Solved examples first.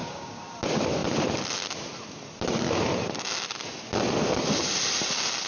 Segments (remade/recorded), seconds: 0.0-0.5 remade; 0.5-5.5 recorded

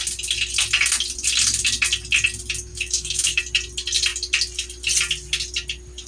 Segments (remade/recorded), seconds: 0.0-2.7 recorded; 2.7-3.4 remade; 3.4-6.1 recorded

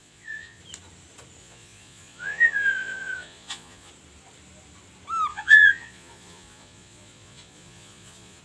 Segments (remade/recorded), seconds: 0.0-0.6 remade; 0.6-1.4 recorded; 1.4-3.9 remade; 3.9-5.3 recorded; 5.3-8.4 remade